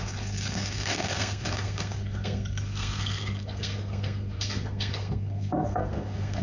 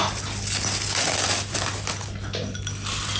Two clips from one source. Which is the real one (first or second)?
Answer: second